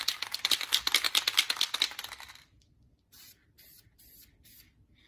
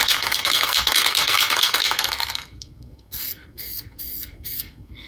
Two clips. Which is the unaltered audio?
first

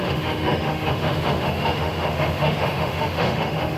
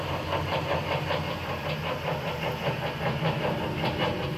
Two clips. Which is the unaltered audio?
second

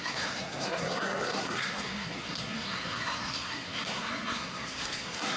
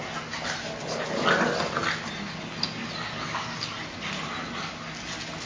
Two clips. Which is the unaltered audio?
second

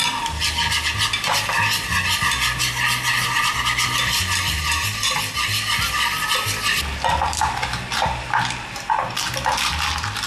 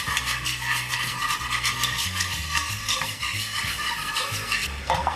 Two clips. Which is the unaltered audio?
first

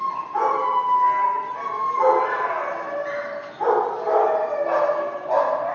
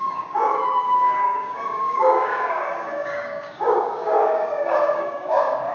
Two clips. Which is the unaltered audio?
first